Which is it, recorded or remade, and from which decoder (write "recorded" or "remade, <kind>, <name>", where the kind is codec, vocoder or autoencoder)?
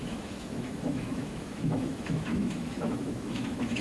remade, autoencoder, DAC-VAE